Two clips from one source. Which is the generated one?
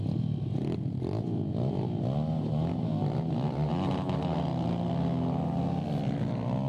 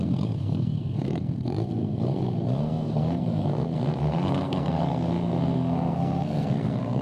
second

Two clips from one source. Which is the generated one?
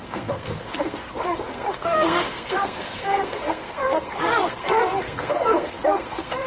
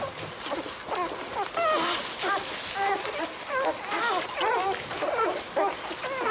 first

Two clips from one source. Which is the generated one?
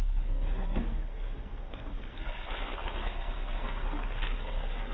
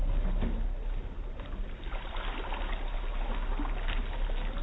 first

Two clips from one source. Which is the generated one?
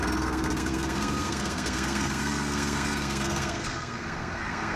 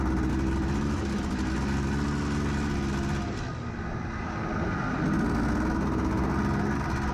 first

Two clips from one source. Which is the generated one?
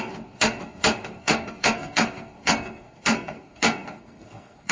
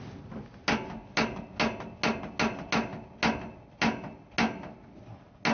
first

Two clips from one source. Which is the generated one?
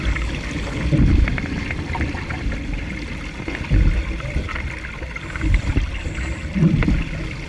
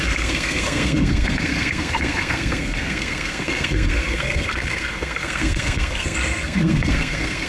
second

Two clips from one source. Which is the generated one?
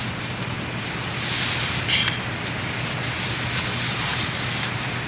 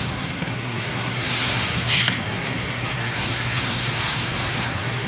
second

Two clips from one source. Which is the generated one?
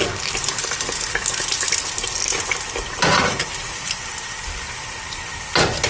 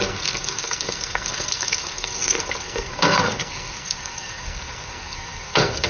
second